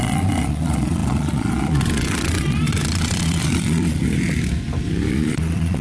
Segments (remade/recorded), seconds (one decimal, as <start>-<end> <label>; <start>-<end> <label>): 0.0-4.0 remade; 4.0-5.1 recorded; 5.1-5.8 remade